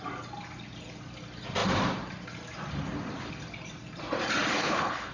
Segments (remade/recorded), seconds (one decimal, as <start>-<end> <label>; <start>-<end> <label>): 0.0-4.6 recorded; 4.6-5.1 remade